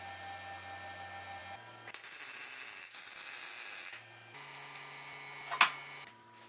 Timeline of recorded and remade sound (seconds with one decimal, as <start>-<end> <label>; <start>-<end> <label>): 0.0-6.5 recorded